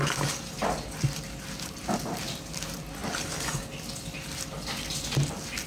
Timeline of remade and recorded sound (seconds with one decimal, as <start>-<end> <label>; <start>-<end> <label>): 0.0-5.7 recorded